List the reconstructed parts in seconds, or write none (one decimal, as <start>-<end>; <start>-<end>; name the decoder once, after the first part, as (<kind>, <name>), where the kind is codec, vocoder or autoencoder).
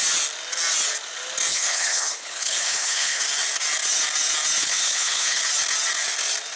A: 1.5-3.2 (codec, HILCodec); 4.6-5.4